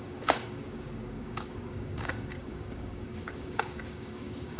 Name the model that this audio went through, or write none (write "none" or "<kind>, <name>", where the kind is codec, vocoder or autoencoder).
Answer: codec, DAC